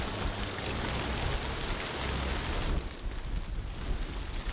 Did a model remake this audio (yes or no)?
no